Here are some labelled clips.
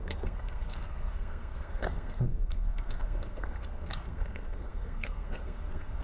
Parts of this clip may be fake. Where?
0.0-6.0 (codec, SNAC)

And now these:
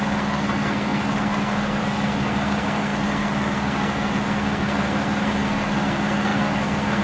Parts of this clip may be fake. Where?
0.0-7.0 (codec, SNAC)